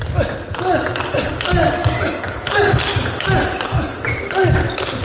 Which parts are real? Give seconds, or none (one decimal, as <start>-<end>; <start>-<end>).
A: 0.0-1.8; 2.8-5.0